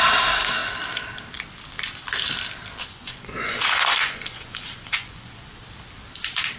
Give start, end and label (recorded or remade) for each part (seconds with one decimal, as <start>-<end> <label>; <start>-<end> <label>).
0.0-2.8 recorded; 2.8-5.6 remade; 5.6-6.6 recorded